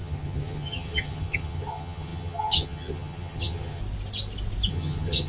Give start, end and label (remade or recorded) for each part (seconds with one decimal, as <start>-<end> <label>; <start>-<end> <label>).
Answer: 0.0-3.8 remade; 3.8-4.7 recorded; 4.7-5.3 remade